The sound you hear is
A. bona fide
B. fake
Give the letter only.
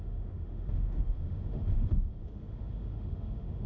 B